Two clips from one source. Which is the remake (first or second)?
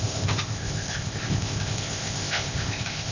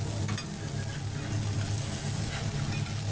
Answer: first